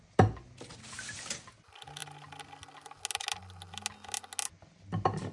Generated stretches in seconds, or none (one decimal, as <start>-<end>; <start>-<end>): none